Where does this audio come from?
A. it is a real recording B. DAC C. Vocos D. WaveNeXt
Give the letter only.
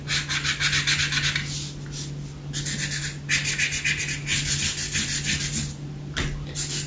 A